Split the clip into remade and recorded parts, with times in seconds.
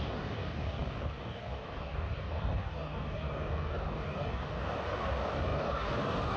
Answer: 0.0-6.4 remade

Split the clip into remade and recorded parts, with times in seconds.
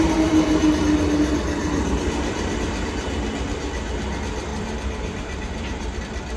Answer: 0.0-1.6 recorded; 1.6-2.9 remade; 2.9-4.5 recorded; 4.5-6.0 remade; 6.0-6.4 recorded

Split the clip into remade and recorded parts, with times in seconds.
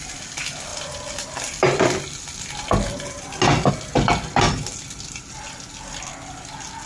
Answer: 0.0-6.9 recorded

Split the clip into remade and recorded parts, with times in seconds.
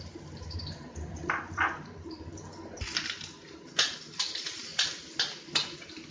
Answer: 0.0-4.7 remade; 4.7-6.1 recorded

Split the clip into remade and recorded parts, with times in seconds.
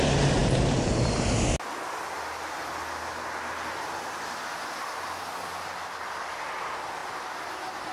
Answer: 0.0-7.9 recorded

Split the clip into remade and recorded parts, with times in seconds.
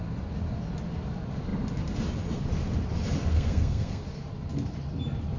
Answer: 0.0-3.3 recorded; 3.3-4.0 remade; 4.0-5.4 recorded